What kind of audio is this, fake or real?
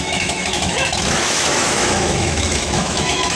fake